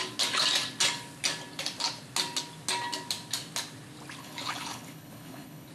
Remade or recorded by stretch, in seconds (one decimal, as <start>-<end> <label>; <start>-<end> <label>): 0.0-4.2 recorded; 4.2-5.7 remade